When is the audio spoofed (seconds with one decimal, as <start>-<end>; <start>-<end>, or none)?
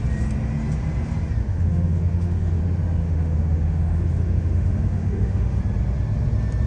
1.4-2.6; 3.0-5.6